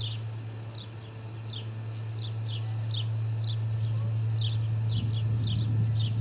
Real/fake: real